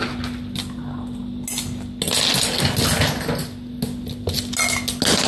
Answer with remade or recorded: recorded